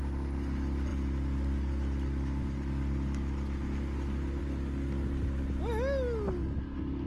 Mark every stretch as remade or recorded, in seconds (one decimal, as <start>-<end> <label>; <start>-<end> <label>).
0.0-7.1 recorded